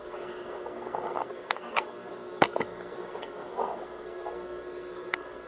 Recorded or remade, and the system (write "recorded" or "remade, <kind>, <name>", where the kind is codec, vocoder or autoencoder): remade, codec, SNAC